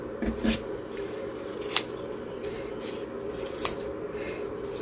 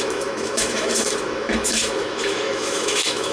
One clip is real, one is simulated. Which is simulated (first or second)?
second